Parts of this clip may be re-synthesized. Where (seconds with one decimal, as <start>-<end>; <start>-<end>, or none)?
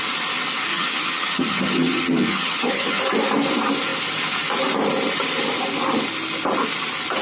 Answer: 0.7-3.0